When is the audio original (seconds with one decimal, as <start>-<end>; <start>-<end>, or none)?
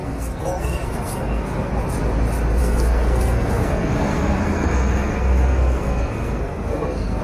1.7-2.6